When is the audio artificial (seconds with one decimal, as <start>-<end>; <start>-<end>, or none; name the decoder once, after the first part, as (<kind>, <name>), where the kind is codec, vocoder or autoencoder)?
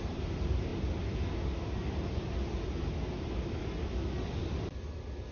none